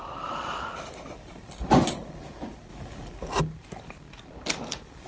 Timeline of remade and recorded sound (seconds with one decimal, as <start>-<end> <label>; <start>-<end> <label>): 0.0-5.1 recorded